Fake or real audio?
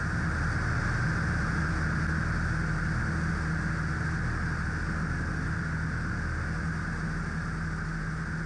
real